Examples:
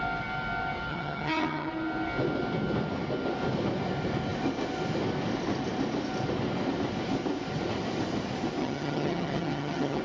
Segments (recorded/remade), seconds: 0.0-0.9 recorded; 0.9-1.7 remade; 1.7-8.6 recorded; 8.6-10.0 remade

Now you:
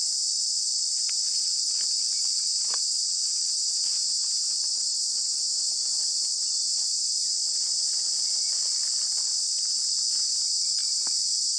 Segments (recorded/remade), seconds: 0.0-3.3 remade; 3.3-4.7 recorded; 4.7-11.6 remade

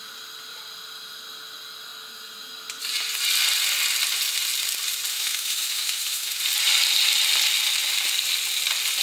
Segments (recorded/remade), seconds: 0.0-5.1 recorded; 5.1-6.4 remade; 6.4-9.0 recorded

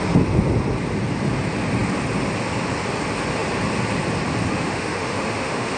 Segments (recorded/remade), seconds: 0.0-4.5 recorded; 4.5-5.8 remade